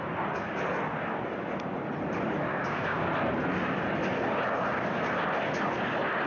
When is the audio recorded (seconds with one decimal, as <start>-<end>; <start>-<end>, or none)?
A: 0.0-2.5; 3.1-6.3

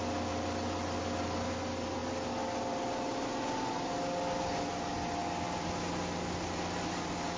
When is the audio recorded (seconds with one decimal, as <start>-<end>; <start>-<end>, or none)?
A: 0.0-7.4

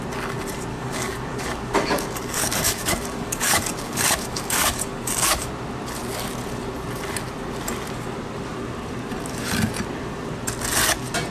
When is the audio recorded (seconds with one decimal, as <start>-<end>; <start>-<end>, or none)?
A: 0.0-0.7; 5.5-11.3

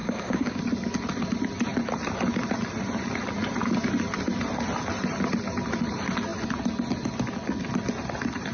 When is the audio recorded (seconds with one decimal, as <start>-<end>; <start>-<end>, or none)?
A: 0.6-8.5

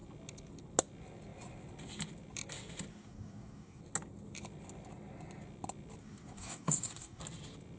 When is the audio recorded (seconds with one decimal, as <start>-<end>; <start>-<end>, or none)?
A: 0.0-2.9; 3.8-6.0; 7.2-7.8